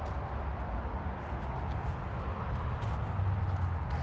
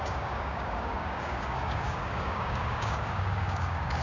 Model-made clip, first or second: second